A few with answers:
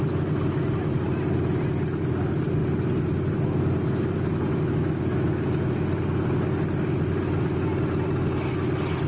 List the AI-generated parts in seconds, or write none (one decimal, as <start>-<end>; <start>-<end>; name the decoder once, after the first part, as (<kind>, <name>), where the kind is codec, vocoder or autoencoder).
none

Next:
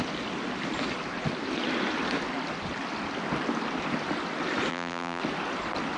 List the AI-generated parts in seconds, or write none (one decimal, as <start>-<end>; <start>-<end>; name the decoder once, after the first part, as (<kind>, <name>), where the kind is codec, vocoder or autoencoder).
4.7-5.2 (vocoder, BigVGAN v2)

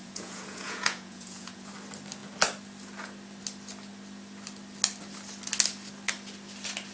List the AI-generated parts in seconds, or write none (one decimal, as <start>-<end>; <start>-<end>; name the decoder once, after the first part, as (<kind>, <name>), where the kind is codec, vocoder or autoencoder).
0.0-1.7 (vocoder, Vocos)

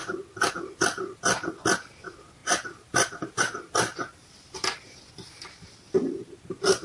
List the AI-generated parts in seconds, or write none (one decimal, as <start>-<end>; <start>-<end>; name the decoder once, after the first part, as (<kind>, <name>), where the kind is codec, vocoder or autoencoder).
2.4-5.1 (vocoder, BigVGAN v2)

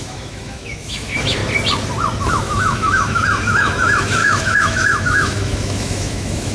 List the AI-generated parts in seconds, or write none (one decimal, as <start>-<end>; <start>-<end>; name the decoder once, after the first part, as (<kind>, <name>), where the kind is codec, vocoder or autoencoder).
0.0-1.4 (autoencoder, DAC-VAE); 2.3-6.5